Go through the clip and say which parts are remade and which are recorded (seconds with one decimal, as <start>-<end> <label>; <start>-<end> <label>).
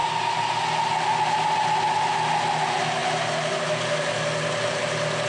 0.0-5.3 recorded